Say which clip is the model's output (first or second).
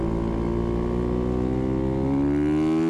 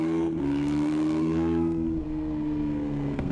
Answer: second